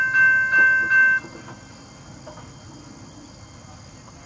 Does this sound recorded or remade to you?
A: recorded